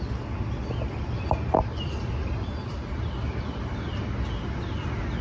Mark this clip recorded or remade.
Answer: recorded